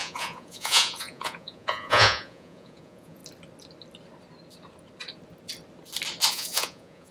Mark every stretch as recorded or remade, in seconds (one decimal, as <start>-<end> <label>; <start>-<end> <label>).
0.0-3.2 remade; 3.2-6.3 recorded; 6.3-7.1 remade